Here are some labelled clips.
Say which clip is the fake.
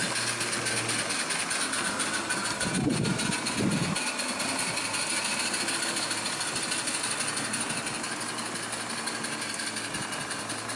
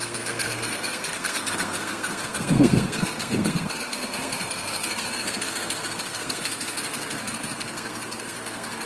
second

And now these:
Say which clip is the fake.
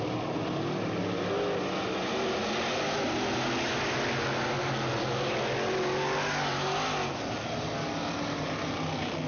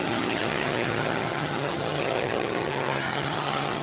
second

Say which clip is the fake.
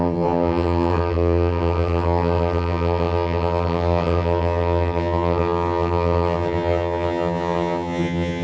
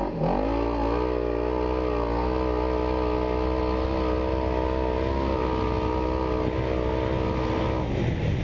first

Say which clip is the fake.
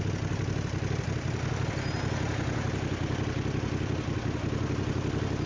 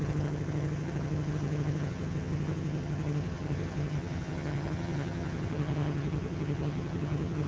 second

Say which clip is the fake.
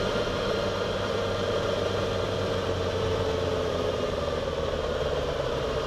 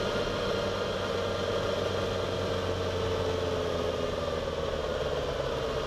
first